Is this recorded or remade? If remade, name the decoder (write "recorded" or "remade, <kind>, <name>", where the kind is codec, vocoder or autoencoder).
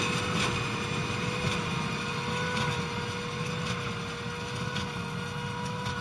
recorded